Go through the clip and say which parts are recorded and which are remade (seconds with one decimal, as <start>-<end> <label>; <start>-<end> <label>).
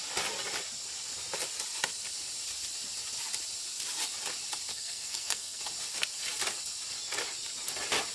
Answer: 0.0-4.7 recorded; 4.7-5.6 remade; 5.6-8.1 recorded